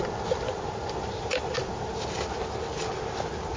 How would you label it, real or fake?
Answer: real